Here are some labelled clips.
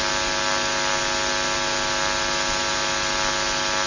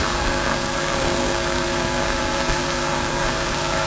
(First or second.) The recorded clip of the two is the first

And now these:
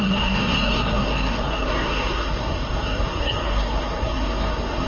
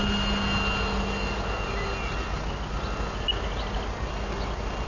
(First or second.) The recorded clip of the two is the second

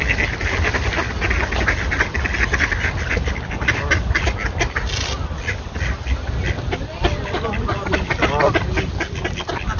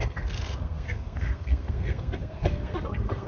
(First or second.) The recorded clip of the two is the first